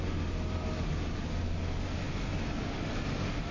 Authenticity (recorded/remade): recorded